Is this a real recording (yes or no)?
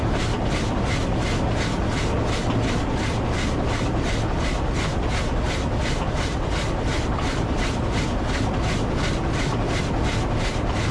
yes